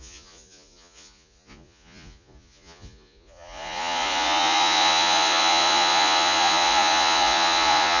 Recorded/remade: remade